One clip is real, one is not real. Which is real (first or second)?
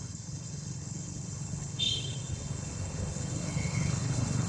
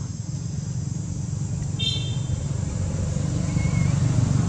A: second